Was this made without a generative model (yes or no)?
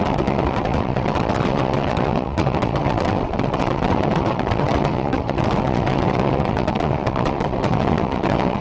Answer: no